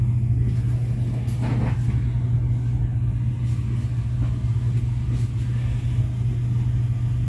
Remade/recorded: recorded